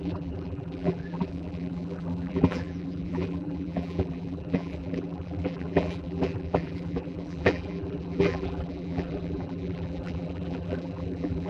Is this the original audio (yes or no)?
no